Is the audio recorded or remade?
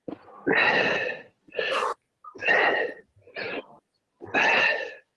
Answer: recorded